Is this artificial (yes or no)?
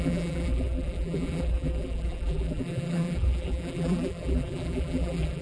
yes